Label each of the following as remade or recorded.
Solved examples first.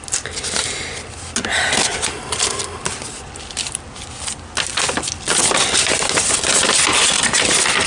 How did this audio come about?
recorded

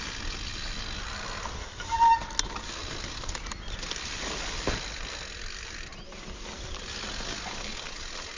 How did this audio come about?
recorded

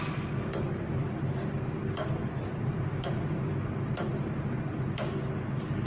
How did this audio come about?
recorded